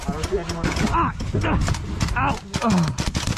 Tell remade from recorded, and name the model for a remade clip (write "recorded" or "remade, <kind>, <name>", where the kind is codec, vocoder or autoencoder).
recorded